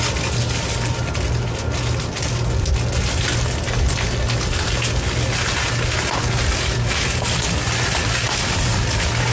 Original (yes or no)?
yes